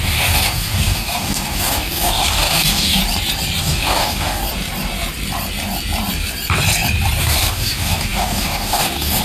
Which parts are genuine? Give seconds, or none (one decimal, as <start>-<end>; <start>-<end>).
3.0-3.6; 4.4-7.2